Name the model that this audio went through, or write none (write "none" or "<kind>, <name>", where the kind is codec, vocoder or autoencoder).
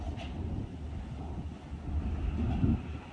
none